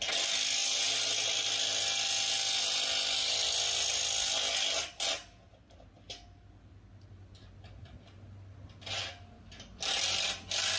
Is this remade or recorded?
recorded